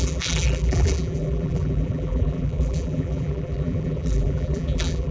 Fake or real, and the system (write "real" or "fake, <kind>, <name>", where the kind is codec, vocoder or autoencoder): fake, vocoder, BigVGAN v2